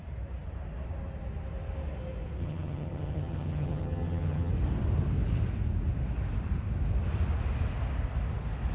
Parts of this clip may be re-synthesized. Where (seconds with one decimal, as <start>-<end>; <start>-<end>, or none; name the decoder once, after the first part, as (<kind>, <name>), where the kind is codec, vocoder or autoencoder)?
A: 2.4-4.5 (vocoder, HiFi-GAN)